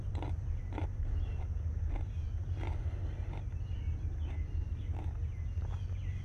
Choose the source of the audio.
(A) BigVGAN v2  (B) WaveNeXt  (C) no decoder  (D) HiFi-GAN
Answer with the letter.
C